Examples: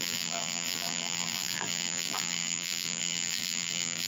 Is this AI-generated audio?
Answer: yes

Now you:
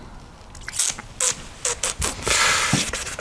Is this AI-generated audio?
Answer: no